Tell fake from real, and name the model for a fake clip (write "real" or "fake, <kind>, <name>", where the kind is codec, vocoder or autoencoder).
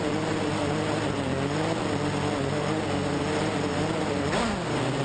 real